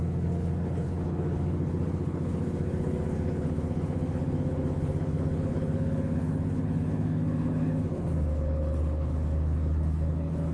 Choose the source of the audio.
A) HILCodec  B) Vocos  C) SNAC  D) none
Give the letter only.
A